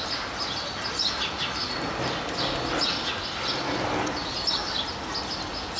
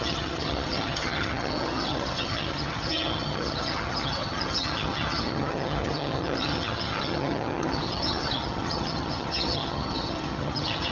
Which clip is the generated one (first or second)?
second